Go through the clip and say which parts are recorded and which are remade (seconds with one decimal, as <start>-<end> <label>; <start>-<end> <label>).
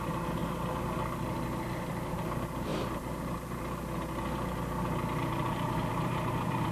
0.0-0.4 remade; 0.4-2.1 recorded; 2.1-2.7 remade; 2.7-5.9 recorded; 5.9-6.7 remade